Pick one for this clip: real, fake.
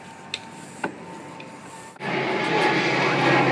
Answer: real